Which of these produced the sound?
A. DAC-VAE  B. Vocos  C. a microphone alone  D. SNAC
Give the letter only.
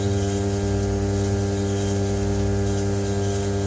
C